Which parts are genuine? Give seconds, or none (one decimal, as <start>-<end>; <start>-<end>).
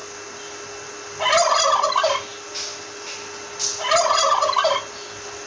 0.0-5.5